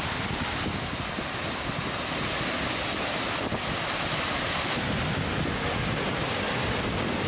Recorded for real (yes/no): yes